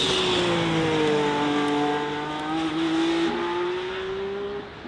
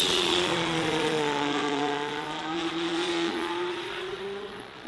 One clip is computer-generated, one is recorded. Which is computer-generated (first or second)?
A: second